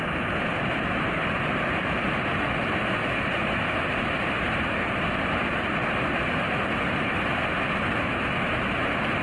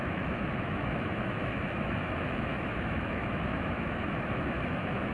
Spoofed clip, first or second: second